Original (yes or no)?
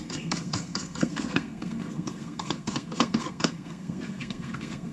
no